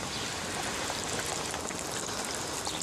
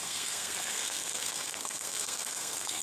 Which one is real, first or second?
first